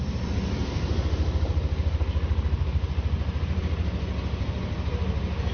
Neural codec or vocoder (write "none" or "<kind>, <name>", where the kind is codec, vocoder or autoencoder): none